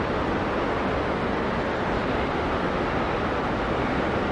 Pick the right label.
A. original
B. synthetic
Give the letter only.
A